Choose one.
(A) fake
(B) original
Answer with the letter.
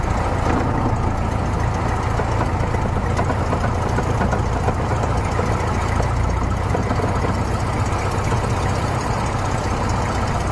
B